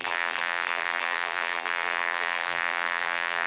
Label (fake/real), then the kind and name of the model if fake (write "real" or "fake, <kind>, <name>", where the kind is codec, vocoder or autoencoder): fake, vocoder, BigVGAN v2